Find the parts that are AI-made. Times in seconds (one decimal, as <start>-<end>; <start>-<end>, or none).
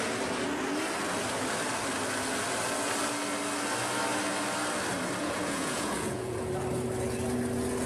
5.2-6.5